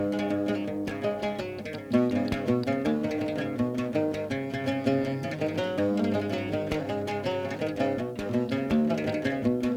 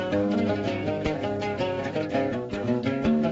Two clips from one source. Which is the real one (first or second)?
first